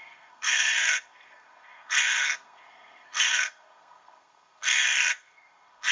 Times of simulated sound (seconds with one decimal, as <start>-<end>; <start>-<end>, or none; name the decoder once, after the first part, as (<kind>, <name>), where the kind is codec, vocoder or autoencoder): 0.0-5.9 (codec, SNAC)